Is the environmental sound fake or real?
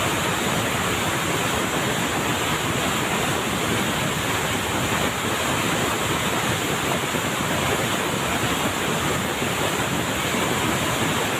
real